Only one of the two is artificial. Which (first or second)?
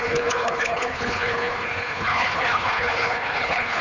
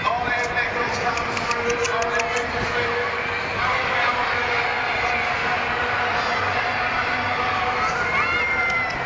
first